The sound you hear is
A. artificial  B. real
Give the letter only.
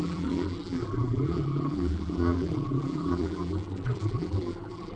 A